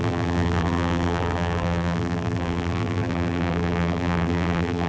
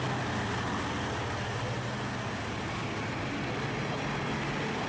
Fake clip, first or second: first